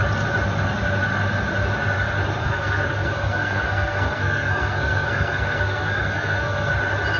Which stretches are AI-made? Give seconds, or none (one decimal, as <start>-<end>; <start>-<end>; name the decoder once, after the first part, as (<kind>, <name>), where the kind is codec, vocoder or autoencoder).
2.4-6.7 (codec, SNAC)

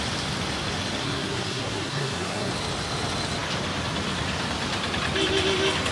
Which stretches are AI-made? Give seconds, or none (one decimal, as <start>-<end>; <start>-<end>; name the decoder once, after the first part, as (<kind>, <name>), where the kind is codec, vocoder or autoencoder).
1.0-2.5 (codec, SNAC)

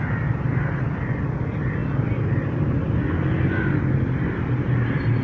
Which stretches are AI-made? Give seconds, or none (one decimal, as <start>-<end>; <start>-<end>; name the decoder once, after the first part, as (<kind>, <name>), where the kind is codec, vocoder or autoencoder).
none